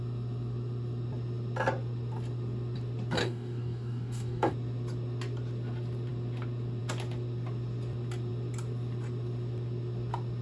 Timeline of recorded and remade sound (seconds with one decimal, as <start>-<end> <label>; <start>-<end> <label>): 0.0-3.2 recorded; 3.2-4.5 remade; 4.5-10.4 recorded